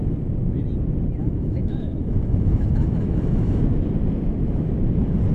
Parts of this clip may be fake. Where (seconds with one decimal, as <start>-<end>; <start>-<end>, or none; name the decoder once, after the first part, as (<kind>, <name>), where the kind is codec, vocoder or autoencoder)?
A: 1.2-3.6 (autoencoder, DAC-VAE)